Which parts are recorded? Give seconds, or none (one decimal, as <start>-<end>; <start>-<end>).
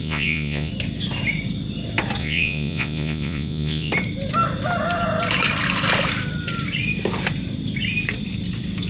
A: 0.7-2.2; 3.9-8.9